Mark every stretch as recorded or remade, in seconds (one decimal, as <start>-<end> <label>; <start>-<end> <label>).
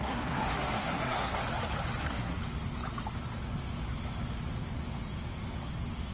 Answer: 0.0-1.4 remade; 1.4-2.0 recorded; 2.0-2.4 remade; 2.4-6.1 recorded